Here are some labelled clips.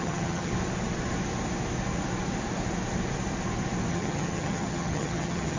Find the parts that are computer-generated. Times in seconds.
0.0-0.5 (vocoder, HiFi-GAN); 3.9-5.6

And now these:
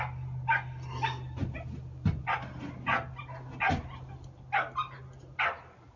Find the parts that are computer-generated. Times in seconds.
none